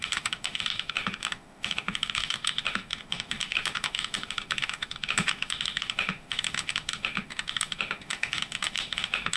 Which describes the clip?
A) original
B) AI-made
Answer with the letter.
B